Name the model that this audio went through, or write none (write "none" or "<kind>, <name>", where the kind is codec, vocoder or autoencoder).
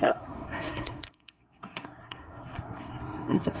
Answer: codec, SNAC